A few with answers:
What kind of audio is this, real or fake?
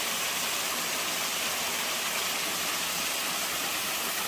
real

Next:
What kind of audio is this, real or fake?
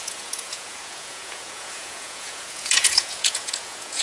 fake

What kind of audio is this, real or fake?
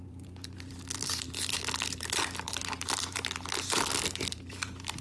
fake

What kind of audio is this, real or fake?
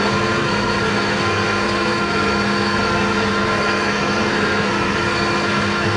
fake